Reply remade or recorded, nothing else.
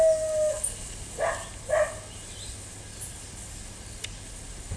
recorded